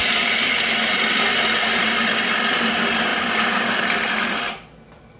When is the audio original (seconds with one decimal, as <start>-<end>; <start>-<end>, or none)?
0.0-1.3; 1.8-5.2